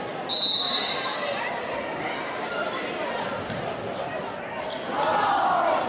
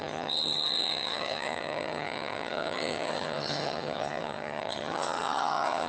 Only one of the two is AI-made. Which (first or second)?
second